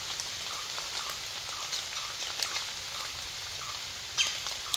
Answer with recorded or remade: recorded